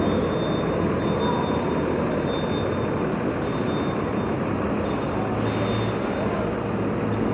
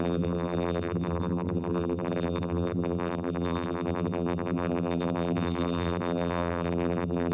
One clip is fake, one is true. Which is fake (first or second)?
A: second